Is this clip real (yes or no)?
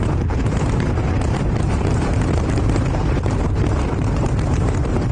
no